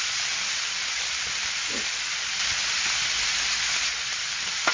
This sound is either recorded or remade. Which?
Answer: recorded